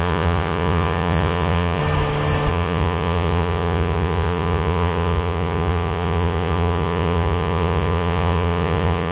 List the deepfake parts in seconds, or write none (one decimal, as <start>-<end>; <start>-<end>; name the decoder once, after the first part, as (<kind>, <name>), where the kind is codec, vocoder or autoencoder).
0.0-1.8 (vocoder, Vocos); 2.5-9.1